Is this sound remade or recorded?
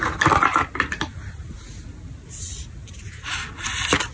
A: recorded